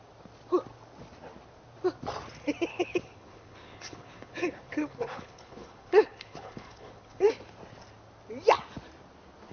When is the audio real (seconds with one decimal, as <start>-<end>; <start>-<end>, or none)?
0.0-2.7; 7.3-9.5